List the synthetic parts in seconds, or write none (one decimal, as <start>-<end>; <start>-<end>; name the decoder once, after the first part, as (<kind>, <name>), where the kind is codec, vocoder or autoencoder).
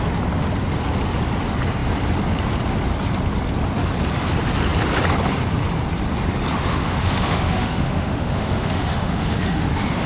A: 6.5-10.1 (autoencoder, DAC-VAE)